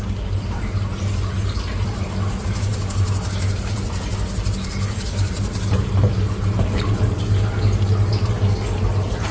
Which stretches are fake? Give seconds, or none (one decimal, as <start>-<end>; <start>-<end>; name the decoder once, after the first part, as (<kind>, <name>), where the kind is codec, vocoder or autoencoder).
none